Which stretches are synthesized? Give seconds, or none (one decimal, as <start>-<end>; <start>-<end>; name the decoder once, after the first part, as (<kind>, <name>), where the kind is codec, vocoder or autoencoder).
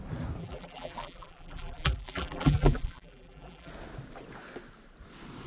0.4-3.7 (vocoder, BigVGAN v2)